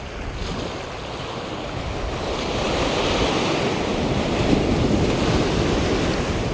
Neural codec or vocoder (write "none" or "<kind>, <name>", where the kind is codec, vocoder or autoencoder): none